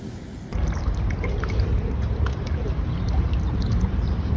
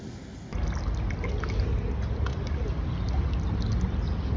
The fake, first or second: first